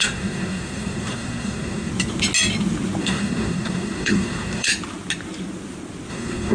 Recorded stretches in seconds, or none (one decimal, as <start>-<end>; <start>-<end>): 1.9-3.0; 4.7-6.1